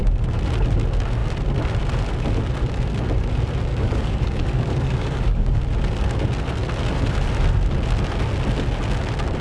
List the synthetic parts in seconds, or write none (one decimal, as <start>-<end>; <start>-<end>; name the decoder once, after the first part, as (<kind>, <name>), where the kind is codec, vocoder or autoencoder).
3.7-5.6 (codec, DAC)